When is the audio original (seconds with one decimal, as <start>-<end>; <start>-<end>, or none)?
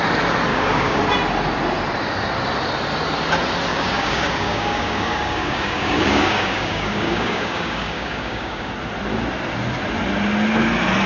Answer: 0.0-0.5; 1.0-3.7; 8.7-11.1